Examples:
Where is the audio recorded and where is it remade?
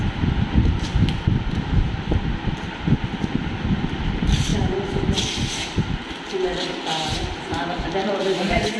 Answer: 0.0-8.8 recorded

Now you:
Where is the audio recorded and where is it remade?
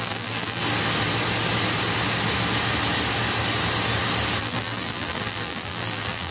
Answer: 0.0-0.6 remade; 0.6-4.4 recorded; 4.4-6.3 remade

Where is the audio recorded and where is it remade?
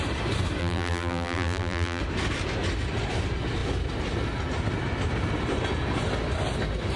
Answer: 0.0-0.6 recorded; 0.6-2.0 remade; 2.0-7.0 recorded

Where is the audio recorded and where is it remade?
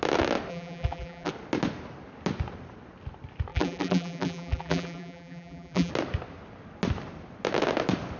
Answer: 0.0-0.5 recorded; 0.5-1.3 remade; 1.3-3.5 recorded; 3.5-5.9 remade; 5.9-8.2 recorded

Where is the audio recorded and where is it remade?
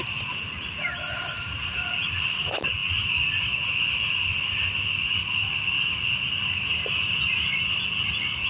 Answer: 0.0-8.5 recorded